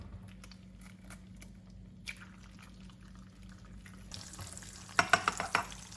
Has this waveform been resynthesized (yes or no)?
no